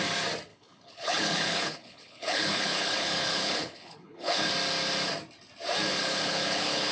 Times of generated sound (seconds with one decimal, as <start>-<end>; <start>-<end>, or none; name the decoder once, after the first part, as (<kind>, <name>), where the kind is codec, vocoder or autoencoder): 0.5-4.5 (codec, HILCodec); 5.9-6.9